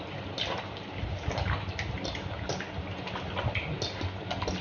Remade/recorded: recorded